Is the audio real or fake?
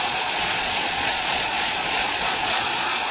fake